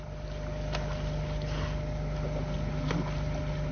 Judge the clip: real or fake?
real